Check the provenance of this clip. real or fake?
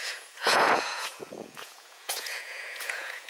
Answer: fake